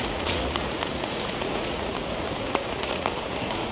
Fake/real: fake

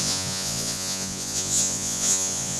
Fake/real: fake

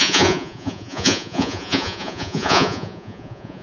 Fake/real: fake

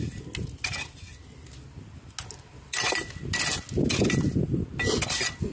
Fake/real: real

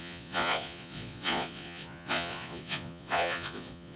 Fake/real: fake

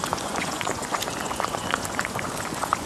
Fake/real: fake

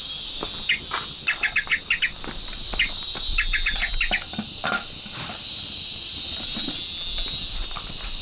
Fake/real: real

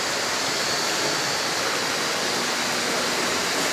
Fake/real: real